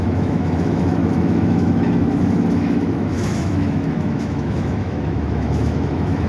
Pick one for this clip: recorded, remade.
remade